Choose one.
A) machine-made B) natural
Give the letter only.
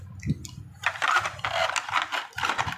B